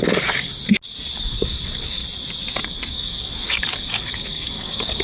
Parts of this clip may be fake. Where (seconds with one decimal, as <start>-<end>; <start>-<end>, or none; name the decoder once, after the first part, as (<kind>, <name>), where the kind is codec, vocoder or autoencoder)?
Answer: 0.0-0.5 (codec, DAC); 1.2-2.0; 2.6-5.0